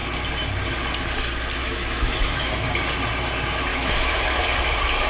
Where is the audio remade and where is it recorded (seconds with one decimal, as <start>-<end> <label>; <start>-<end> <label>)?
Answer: 0.0-1.6 recorded; 1.6-2.5 remade; 2.5-3.7 recorded; 3.7-4.4 remade; 4.4-5.1 recorded